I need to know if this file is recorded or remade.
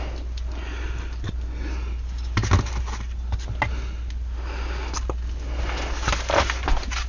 recorded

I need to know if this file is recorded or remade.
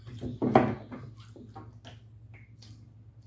recorded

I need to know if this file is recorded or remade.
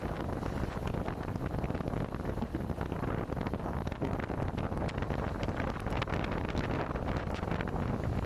recorded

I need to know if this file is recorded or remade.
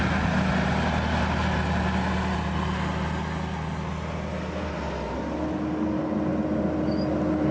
recorded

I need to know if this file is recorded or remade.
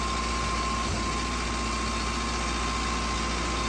recorded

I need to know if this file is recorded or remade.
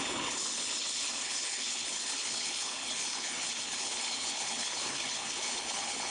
remade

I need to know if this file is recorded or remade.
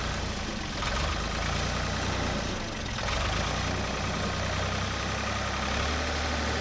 recorded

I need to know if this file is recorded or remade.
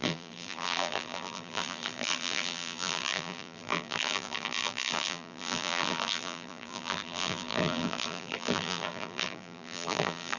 remade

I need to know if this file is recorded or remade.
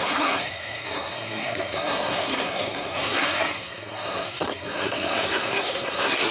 remade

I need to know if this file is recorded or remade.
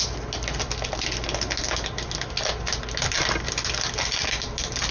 recorded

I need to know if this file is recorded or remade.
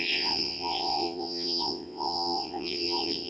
remade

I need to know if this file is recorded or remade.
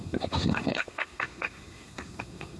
remade